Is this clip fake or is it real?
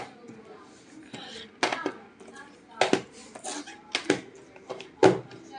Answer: real